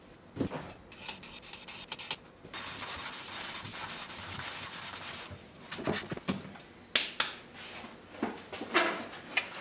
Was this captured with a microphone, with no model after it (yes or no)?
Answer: yes